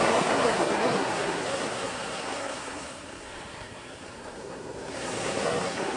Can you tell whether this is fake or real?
fake